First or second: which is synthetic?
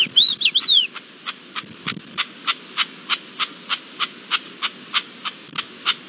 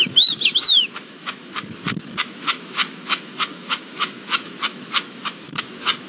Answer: second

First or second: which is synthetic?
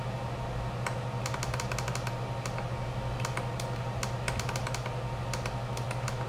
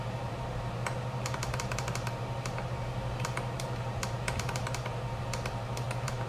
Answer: second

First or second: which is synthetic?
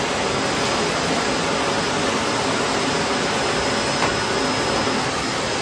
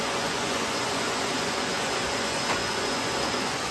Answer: second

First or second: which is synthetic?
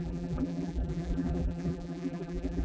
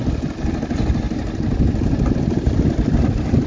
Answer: first